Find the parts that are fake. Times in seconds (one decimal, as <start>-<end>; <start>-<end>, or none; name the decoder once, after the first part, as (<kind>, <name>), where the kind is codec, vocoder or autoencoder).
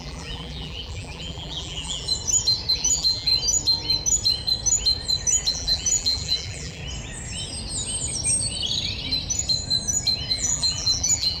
0.0-2.1 (vocoder, BigVGAN v2); 2.7-3.3; 5.5-6.8; 10.3-11.4